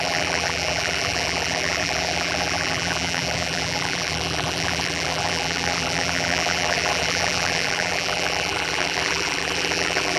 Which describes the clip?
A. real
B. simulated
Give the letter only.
B